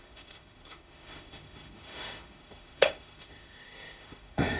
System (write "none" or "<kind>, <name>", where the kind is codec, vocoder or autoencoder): autoencoder, DAC-VAE